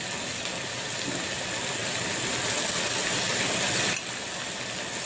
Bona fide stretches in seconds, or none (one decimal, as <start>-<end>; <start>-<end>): 0.0-5.1